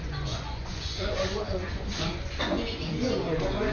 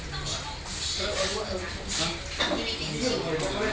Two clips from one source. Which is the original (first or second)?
second